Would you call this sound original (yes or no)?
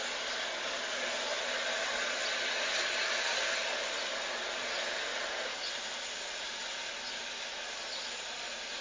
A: yes